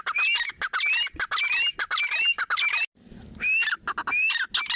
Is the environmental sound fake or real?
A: real